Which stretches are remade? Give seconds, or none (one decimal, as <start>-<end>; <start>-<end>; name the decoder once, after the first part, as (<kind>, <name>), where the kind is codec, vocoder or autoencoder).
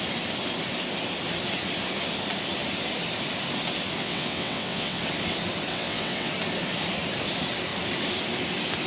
4.0-5.0 (vocoder, WaveNeXt); 5.7-6.3